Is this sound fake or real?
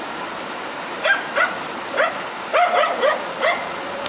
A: real